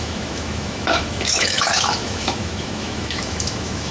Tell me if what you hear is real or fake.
fake